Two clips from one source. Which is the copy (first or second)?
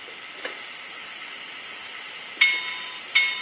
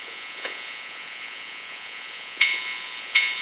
second